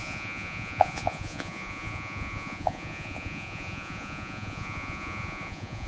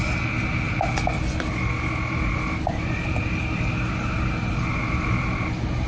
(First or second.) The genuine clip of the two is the second